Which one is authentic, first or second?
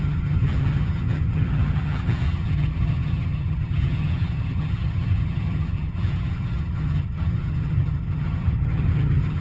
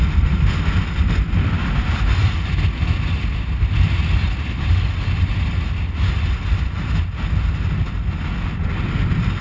second